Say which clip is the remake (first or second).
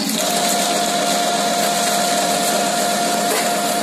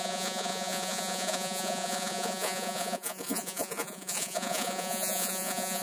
second